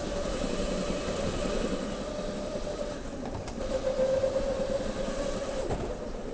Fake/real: real